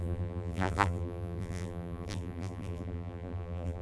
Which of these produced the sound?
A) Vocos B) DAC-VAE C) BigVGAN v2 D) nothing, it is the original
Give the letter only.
C